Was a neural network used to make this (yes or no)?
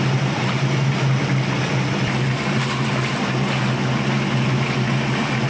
no